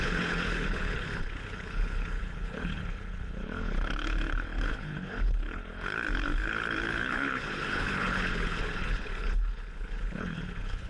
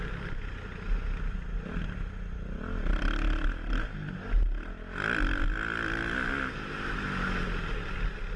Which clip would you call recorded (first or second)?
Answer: second